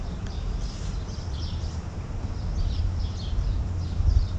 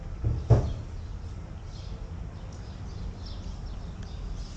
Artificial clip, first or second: first